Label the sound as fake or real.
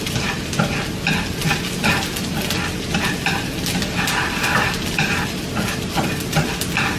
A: real